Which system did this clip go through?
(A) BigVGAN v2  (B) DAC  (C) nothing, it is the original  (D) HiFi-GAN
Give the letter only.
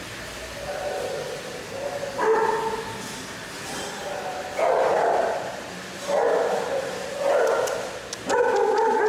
C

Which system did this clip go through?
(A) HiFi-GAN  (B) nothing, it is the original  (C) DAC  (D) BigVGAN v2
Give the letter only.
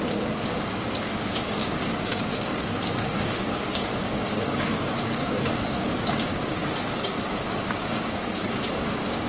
C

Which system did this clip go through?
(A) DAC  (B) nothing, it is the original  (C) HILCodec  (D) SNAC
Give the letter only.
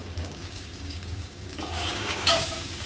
A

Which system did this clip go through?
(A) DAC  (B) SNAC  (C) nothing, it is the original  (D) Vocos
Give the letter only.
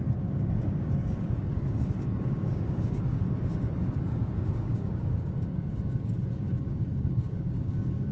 A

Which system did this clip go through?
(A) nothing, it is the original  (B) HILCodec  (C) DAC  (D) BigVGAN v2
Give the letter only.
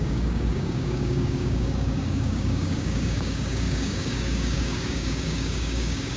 C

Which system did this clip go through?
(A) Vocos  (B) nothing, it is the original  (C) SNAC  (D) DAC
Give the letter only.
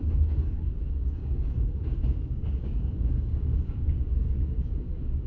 D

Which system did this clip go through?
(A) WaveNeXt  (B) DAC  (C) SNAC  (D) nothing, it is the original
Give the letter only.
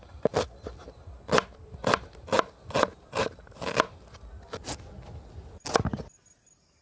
D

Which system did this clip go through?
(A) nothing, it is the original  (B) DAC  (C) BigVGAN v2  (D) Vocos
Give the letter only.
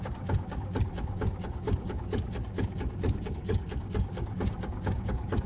B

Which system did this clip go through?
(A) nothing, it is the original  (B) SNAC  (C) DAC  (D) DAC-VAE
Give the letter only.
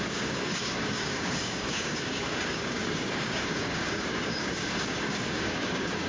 C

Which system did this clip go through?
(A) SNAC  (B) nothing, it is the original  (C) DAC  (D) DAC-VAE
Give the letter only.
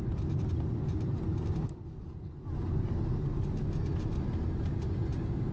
B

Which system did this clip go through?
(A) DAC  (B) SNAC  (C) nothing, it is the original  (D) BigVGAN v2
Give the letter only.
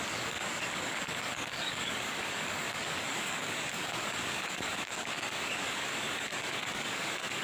A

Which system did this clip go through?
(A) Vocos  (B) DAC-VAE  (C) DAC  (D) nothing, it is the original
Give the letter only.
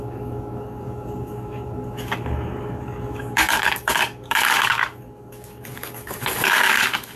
C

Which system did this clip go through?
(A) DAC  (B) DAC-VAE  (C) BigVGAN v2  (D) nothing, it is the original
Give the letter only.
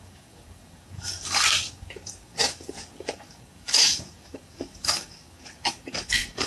A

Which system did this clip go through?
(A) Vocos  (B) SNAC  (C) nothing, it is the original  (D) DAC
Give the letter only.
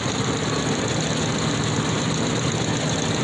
C